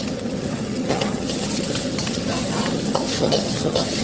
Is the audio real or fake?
fake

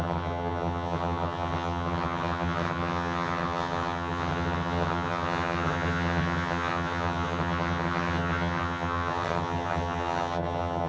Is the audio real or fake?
fake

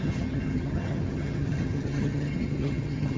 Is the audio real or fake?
fake